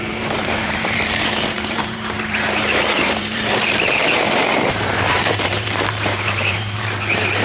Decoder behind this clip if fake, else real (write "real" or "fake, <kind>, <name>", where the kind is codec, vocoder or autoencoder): fake, vocoder, BigVGAN v2